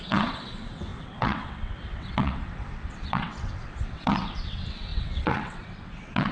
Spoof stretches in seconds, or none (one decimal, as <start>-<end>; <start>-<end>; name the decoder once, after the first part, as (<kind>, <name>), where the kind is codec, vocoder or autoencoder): 0.0-6.3 (vocoder, WaveNeXt)